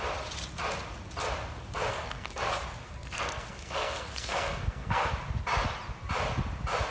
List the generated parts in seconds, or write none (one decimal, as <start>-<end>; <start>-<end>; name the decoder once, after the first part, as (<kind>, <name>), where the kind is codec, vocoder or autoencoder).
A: 1.9-2.4 (codec, SNAC); 2.8-5.1